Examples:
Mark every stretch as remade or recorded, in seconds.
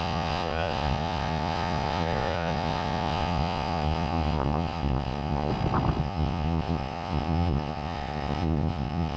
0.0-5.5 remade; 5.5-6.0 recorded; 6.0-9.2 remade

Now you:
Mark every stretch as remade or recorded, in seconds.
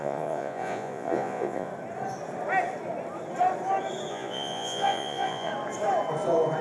0.0-1.7 remade; 1.7-4.1 recorded; 4.1-5.5 remade; 5.5-6.6 recorded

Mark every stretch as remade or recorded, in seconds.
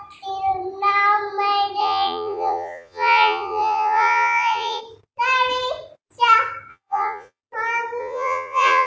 0.0-1.8 recorded; 1.8-4.8 remade; 4.8-6.7 recorded; 6.7-7.4 remade; 7.4-8.0 recorded; 8.0-8.9 remade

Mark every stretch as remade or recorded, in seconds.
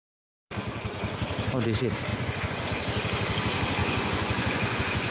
0.0-2.1 recorded; 2.1-2.6 remade; 2.6-3.8 recorded; 3.8-5.1 remade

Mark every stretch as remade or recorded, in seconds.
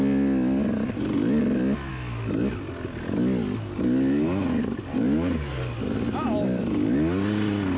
0.0-7.8 recorded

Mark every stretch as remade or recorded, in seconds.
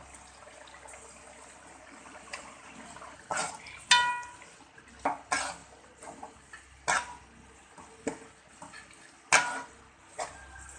0.0-10.8 recorded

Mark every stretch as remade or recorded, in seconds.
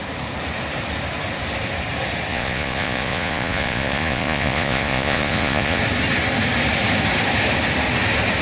0.0-2.3 recorded; 2.3-5.8 remade; 5.8-8.4 recorded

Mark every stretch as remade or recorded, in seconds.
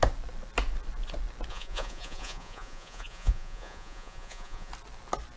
0.0-1.5 recorded; 1.5-4.7 remade; 4.7-5.4 recorded